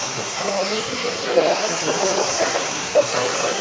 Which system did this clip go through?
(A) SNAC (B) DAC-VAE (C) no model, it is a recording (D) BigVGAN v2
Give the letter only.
A